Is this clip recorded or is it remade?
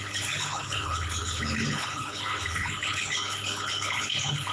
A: remade